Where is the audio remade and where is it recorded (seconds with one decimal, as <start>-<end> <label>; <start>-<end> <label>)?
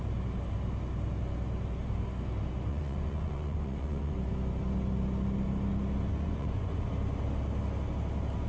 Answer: 0.0-2.7 recorded; 2.7-4.1 remade; 4.1-6.1 recorded; 6.1-6.9 remade; 6.9-8.5 recorded